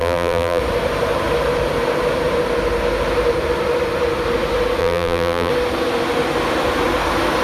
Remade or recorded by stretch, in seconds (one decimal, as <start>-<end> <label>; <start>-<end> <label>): 0.0-0.6 remade; 0.6-4.8 recorded; 4.8-5.5 remade; 5.5-7.4 recorded